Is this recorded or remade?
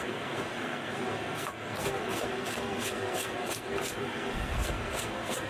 remade